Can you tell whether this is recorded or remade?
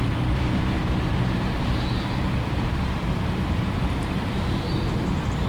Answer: remade